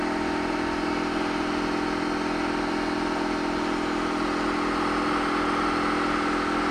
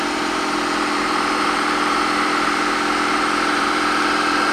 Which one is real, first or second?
first